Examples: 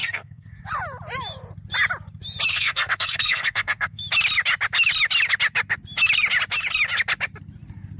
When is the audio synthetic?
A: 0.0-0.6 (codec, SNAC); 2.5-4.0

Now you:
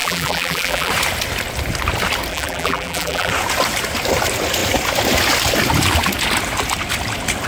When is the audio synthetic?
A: 0.0-0.9 (vocoder, BigVGAN v2); 2.3-3.3

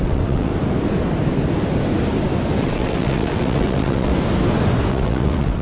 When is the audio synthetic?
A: 0.0-0.5 (vocoder, WaveNeXt); 2.6-4.1; 4.9-5.6

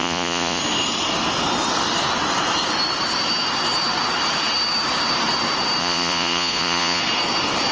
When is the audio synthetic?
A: 0.0-0.6 (vocoder, Vocos); 5.8-7.0

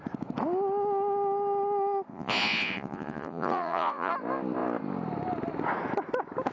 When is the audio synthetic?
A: 2.1-4.1 (vocoder, Vocos)

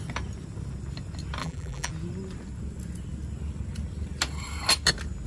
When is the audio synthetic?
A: 1.4-1.9 (vocoder, BigVGAN v2)

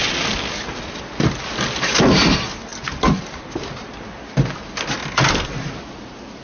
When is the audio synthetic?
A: none